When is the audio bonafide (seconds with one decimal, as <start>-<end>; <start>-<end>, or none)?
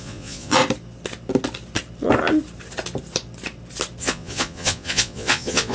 0.6-4.0